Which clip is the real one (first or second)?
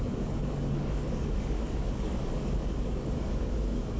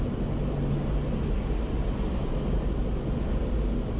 second